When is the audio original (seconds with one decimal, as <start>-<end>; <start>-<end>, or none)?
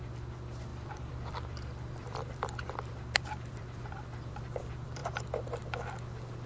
0.0-0.7; 4.6-6.5